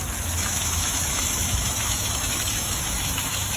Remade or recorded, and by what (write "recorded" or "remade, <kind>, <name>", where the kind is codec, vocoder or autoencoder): remade, autoencoder, DAC-VAE